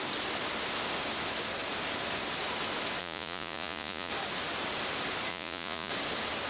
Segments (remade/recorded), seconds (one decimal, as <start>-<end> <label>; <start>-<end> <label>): 0.0-3.0 recorded; 3.0-4.1 remade; 4.1-5.3 recorded; 5.3-5.9 remade; 5.9-6.5 recorded